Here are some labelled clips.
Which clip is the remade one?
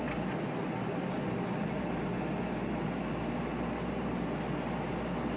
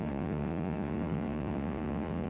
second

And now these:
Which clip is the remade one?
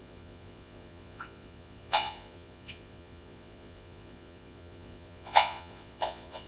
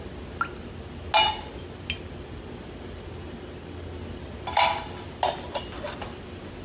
first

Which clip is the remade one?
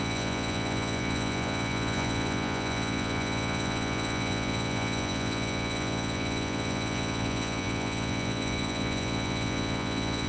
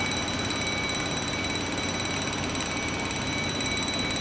first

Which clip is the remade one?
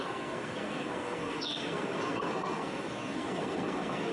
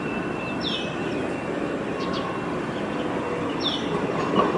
first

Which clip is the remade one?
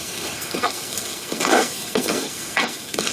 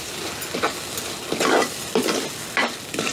first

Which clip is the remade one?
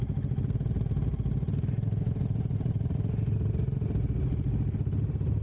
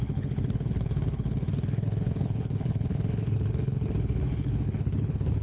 second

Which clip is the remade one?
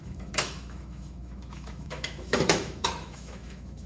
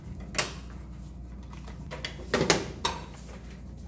first